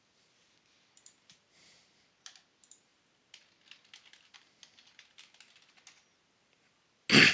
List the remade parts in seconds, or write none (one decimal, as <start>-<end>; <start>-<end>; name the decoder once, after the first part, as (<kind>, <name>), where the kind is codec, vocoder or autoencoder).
none